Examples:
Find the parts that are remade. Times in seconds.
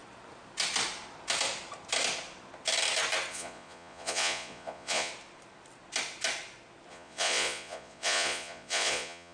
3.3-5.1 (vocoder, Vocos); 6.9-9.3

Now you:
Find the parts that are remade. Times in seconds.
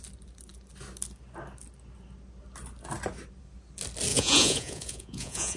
4.1-5.6 (vocoder, Vocos)